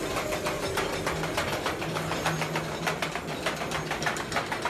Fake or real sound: real